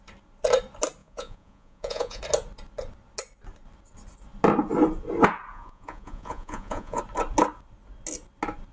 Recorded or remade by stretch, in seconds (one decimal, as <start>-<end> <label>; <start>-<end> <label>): 0.0-1.0 recorded; 1.0-2.2 remade; 2.2-5.5 recorded; 5.5-7.0 remade; 7.0-8.7 recorded